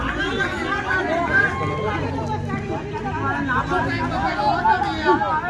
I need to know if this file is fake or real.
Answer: real